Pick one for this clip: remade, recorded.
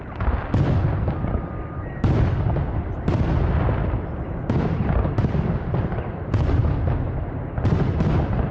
recorded